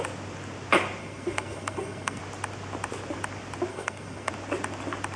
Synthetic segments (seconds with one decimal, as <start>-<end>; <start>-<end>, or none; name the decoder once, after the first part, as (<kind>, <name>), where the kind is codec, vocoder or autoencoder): 1.0-2.2 (codec, SNAC); 3.7-4.3